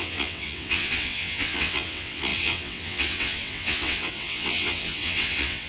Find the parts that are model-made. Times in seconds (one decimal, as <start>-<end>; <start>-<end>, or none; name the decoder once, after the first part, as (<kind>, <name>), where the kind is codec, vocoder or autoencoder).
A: 0.0-5.7 (vocoder, WaveNeXt)